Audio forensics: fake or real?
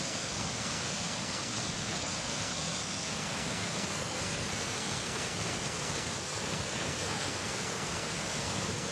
fake